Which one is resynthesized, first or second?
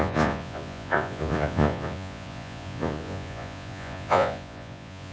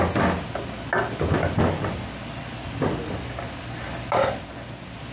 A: first